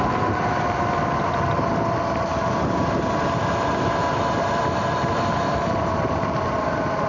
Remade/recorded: recorded